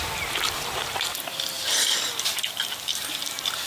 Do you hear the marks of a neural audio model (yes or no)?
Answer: no